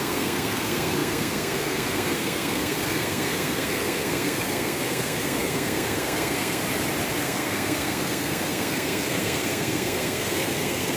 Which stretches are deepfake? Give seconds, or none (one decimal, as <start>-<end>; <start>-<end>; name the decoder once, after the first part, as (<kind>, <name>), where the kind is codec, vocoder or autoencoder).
0.0-6.6 (codec, SNAC); 7.1-11.0